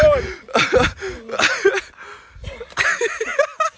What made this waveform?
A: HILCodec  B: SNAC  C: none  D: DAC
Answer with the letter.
C